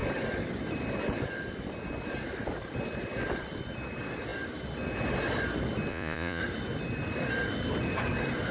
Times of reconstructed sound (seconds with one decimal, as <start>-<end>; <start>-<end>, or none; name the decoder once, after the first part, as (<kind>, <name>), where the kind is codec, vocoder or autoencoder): 5.9-6.4 (vocoder, Vocos)